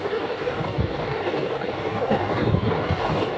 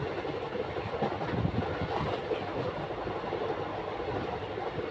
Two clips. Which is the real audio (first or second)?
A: second